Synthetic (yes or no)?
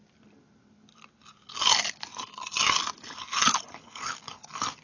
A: no